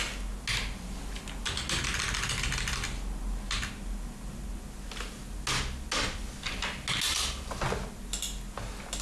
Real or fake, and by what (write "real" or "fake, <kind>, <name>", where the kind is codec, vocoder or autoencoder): real